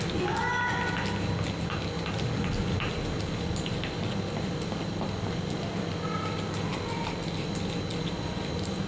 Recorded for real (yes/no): yes